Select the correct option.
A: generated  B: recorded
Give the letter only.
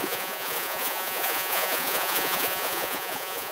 A